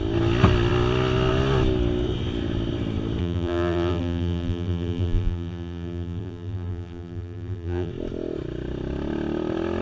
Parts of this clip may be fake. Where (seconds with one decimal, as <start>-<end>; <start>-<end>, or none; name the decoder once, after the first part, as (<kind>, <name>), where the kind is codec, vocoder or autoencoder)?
3.2-7.9 (vocoder, BigVGAN v2)